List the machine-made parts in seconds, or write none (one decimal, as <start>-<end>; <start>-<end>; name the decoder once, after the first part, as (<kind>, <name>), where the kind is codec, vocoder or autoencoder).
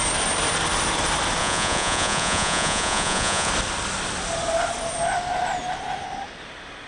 1.4-3.5 (vocoder, Vocos)